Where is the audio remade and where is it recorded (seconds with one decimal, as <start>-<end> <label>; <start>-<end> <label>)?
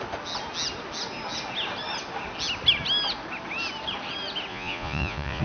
0.0-4.5 recorded; 4.5-5.4 remade